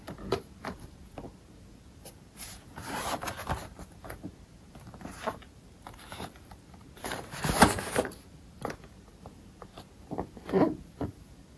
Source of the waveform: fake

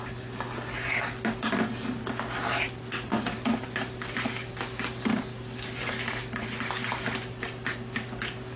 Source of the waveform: real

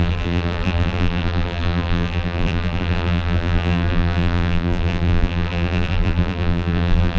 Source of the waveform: fake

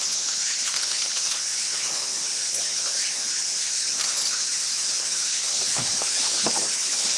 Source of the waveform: fake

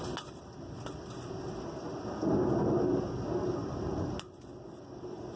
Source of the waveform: real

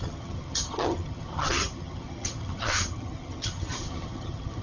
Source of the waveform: fake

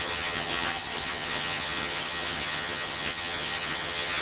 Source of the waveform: fake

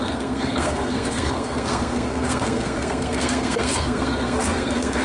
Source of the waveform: fake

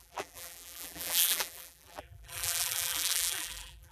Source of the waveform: fake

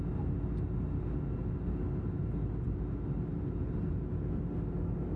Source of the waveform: real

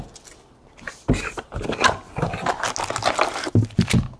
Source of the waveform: real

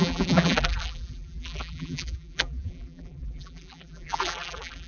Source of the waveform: fake